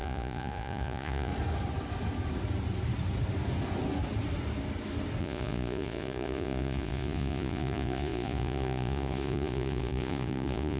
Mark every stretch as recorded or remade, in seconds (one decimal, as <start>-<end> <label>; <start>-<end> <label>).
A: 0.0-1.3 remade; 1.3-5.2 recorded; 5.2-10.8 remade